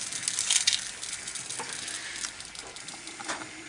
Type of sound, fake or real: real